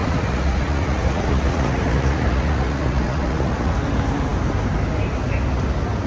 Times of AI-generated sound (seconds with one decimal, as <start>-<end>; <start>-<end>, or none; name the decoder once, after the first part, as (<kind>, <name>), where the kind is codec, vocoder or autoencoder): 0.0-3.7 (vocoder, Vocos)